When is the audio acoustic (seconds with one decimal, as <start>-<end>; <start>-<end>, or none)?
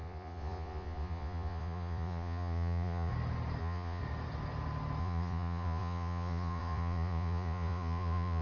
3.1-3.6; 4.0-5.0